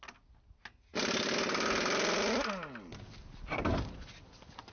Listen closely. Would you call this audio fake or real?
real